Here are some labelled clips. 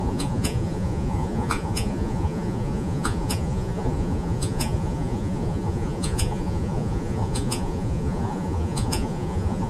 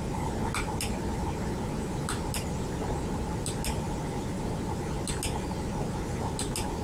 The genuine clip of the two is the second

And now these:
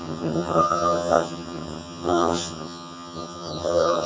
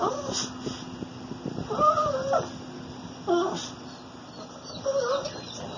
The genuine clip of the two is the second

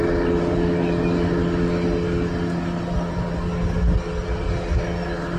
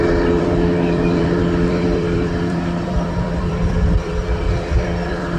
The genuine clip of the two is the first